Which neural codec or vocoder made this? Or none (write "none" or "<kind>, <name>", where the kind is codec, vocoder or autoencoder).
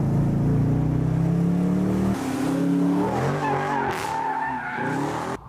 none